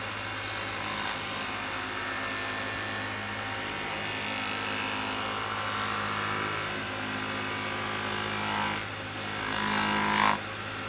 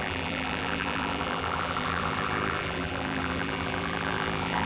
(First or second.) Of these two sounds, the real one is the first